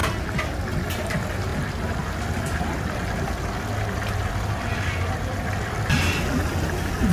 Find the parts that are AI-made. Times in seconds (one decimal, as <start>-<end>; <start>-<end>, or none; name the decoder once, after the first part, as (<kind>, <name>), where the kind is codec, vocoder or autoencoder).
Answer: none